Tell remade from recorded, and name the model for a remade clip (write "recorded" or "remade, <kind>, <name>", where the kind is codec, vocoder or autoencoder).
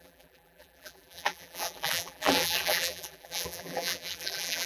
remade, vocoder, BigVGAN v2